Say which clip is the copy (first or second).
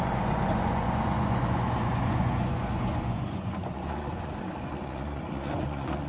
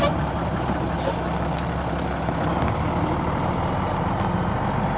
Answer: first